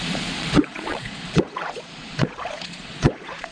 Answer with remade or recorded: remade